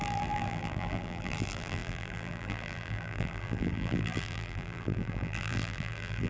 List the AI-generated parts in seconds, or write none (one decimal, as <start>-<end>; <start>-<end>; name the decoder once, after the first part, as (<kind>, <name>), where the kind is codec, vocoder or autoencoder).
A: 0.0-6.3 (vocoder, BigVGAN v2)